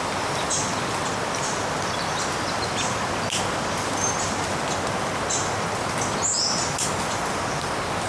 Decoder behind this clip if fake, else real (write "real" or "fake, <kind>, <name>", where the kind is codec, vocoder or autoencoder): real